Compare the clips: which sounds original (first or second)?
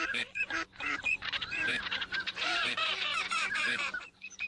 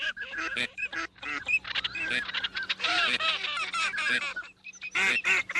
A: second